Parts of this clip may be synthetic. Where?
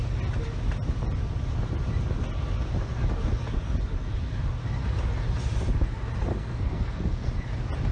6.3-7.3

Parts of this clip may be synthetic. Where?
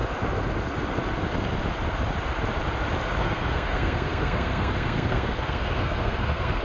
3.2-6.6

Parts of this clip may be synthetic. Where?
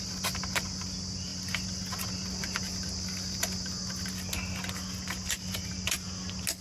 none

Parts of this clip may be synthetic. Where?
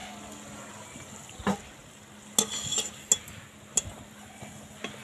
none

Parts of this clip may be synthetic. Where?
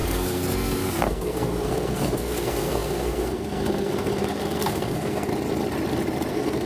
0.0-5.3; 6.3-6.7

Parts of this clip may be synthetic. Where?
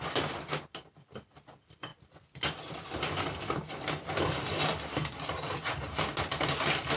none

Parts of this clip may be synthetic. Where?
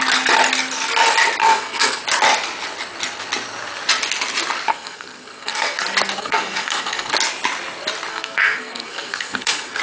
1.4-2.0; 4.7-5.8; 6.2-7.1; 8.1-9.8